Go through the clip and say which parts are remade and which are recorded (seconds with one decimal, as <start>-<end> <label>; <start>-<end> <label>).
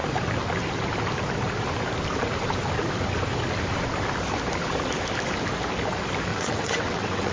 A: 0.0-6.3 recorded; 6.3-7.3 remade